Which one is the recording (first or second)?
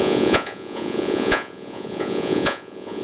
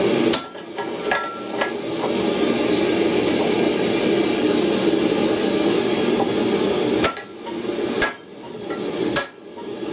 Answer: second